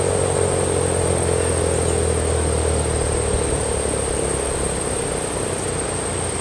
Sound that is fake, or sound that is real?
real